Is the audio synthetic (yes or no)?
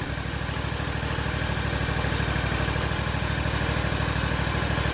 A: no